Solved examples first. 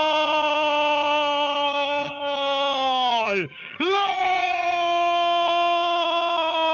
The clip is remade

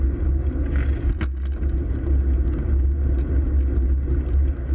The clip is recorded